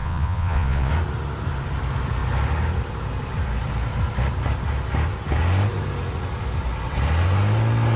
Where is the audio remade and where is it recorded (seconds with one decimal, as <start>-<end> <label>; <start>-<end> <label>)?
0.0-0.9 remade; 0.9-8.0 recorded